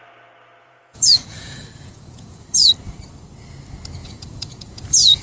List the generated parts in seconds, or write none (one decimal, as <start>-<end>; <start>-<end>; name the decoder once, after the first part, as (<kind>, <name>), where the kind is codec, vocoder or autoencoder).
0.6-2.7 (vocoder, Vocos); 4.0-5.2